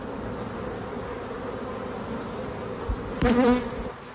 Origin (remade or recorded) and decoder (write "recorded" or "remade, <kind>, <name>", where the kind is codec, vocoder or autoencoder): recorded